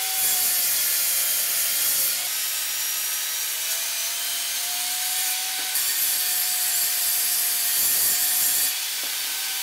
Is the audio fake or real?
fake